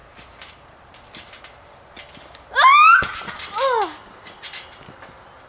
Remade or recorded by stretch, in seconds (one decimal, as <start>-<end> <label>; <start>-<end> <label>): 0.0-5.5 recorded